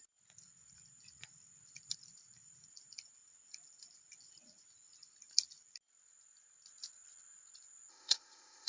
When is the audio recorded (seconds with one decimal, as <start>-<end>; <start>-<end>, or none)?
0.0-7.9